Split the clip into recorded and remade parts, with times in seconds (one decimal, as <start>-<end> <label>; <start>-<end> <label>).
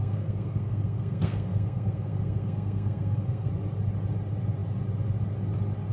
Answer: 0.0-3.5 remade; 3.5-5.9 recorded